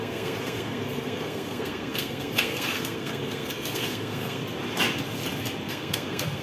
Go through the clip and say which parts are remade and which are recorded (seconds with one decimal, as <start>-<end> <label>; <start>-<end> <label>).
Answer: 0.0-4.4 remade; 4.4-5.7 recorded; 5.7-6.4 remade